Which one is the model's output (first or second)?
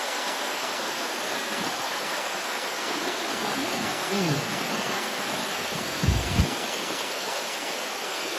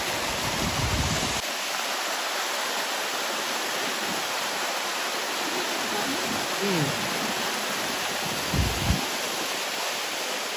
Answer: first